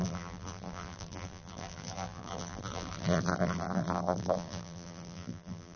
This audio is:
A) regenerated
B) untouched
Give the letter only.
A